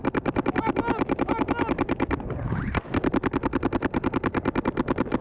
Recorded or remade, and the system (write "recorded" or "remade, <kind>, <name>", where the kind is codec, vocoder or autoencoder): recorded